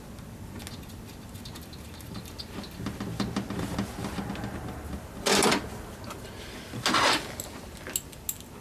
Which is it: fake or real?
real